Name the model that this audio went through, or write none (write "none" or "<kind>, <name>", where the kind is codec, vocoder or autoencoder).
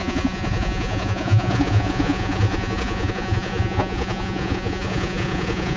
vocoder, Vocos